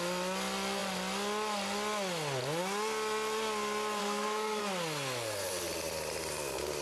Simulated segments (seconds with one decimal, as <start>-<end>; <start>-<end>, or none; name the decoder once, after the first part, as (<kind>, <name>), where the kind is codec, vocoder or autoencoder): 4.0-4.6 (codec, SNAC)